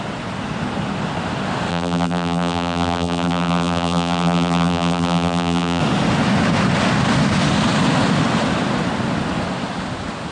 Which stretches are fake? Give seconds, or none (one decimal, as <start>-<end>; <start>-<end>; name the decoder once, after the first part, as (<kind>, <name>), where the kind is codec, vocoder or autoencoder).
1.7-5.8 (vocoder, BigVGAN v2)